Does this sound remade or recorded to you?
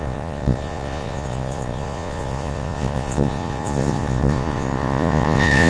remade